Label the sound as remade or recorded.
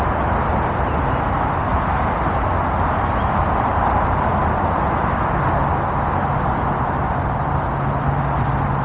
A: recorded